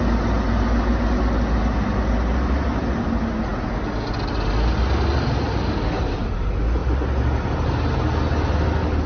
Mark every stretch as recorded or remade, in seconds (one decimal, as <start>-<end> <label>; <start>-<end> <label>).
0.0-9.1 recorded